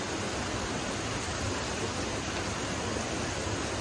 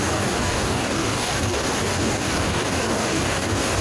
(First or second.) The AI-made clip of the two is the second